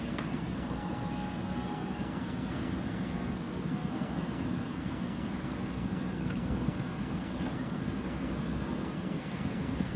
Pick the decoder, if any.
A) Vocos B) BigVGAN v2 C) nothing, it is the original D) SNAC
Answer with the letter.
D